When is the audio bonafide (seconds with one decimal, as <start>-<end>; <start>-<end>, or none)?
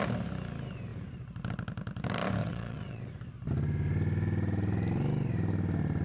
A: 0.0-2.4; 3.1-6.0